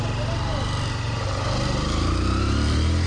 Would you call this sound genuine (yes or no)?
yes